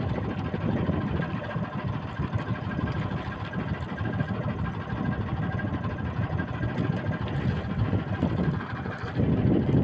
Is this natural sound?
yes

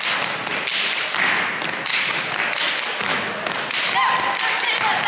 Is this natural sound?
yes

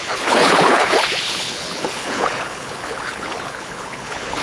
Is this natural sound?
no